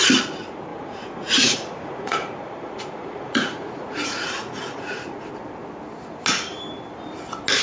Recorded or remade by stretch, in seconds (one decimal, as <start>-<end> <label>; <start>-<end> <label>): 0.0-0.7 recorded; 0.7-5.3 remade; 5.3-7.6 recorded